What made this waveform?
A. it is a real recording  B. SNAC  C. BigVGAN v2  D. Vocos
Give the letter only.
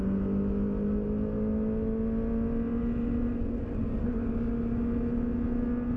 A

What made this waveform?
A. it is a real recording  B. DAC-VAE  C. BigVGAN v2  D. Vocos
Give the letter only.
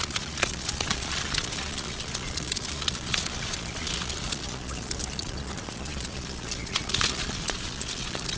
D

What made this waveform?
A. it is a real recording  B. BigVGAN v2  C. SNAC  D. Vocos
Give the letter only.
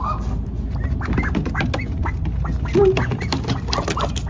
A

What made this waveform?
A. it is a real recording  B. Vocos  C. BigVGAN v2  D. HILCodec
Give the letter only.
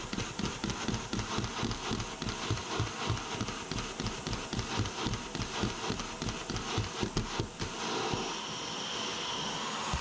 A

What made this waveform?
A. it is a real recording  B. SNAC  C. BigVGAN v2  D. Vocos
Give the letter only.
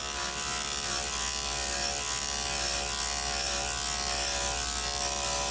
A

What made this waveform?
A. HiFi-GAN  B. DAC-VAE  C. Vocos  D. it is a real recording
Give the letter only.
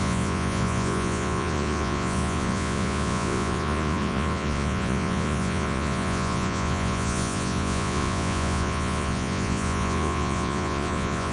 C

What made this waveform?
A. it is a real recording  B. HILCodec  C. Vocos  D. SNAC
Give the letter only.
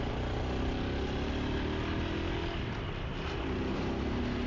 A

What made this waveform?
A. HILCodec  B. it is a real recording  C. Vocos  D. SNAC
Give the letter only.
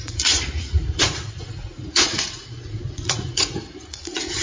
C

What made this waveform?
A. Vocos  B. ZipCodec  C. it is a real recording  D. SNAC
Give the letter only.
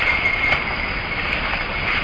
C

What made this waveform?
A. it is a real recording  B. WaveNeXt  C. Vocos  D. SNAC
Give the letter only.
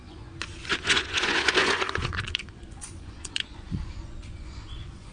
C